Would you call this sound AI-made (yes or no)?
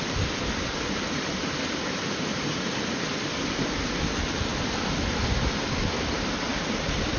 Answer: yes